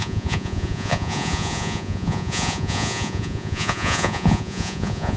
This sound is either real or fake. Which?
fake